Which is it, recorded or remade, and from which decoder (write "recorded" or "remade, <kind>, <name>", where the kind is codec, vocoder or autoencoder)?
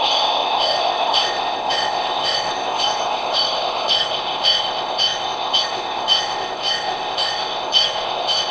remade, codec, ZipCodec